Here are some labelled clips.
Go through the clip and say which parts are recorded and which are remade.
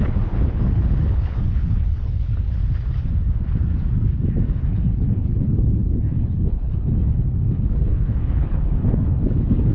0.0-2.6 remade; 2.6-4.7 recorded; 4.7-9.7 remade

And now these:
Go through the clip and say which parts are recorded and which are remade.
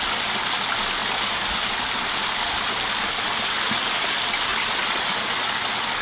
0.0-6.0 recorded